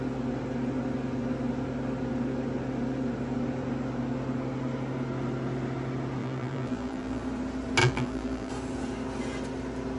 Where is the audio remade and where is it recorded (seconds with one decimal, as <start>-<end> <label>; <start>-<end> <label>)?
0.0-6.2 recorded; 6.2-7.2 remade; 7.2-7.8 recorded; 7.8-8.5 remade; 8.5-10.0 recorded